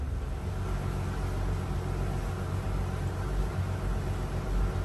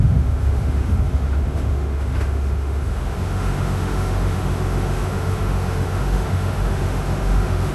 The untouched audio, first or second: first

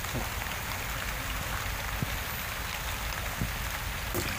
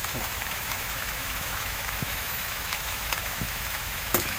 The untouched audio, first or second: first